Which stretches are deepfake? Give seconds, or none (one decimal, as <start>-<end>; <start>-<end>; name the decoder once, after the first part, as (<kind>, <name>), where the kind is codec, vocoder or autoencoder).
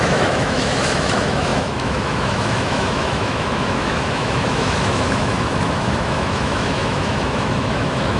0.0-8.2 (autoencoder, DAC-VAE)